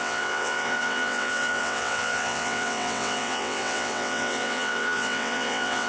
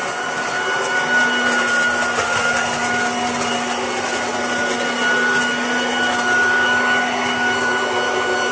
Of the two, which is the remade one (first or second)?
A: first